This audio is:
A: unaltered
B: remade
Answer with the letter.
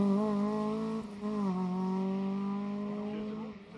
A